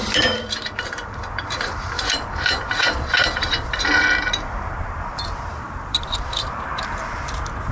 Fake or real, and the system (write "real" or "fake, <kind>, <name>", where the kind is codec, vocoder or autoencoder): fake, vocoder, BigVGAN v2